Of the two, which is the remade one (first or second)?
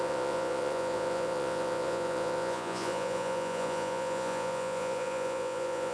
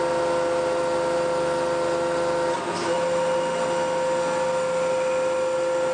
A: first